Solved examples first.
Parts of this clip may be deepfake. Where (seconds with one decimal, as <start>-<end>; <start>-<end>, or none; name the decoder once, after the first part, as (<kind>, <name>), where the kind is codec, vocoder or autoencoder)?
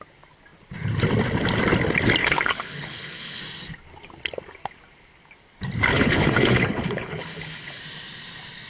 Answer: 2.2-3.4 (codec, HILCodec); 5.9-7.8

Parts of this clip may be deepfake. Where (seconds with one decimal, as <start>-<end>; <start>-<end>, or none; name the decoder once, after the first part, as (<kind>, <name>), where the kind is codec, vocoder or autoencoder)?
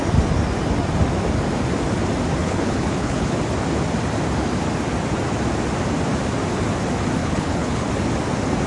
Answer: 2.4-3.4 (codec, HILCodec); 7.2-7.9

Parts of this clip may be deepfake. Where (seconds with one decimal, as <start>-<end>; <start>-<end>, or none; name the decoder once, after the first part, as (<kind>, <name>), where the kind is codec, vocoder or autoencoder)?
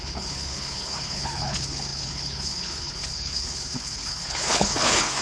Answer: 0.0-5.2 (codec, HILCodec)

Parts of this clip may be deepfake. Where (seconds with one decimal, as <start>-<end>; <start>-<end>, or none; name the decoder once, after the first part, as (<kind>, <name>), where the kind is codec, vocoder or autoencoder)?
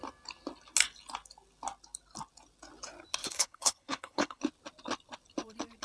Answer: 3.2-4.4 (codec, HILCodec)